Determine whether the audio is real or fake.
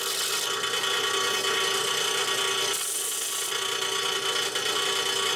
real